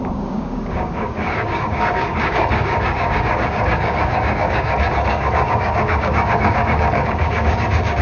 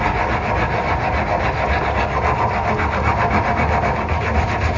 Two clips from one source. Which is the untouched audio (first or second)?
second